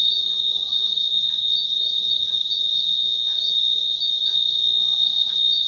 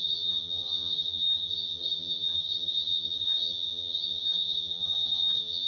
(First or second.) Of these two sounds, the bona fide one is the first